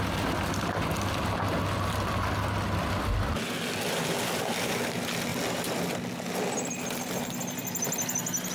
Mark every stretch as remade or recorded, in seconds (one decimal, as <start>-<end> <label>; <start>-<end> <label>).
0.0-8.5 recorded